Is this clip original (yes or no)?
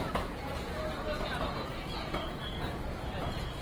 no